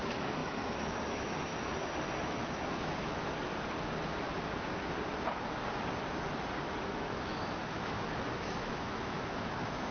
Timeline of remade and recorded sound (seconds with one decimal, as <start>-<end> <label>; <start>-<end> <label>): 0.0-1.5 remade; 1.5-2.2 recorded; 2.2-3.5 remade; 3.5-6.6 recorded; 6.6-9.9 remade